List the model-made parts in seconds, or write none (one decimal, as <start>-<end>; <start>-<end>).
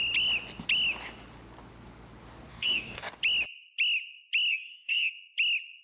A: 2.5-3.1; 4.5-5.1